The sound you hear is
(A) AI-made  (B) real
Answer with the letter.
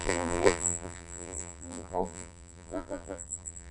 A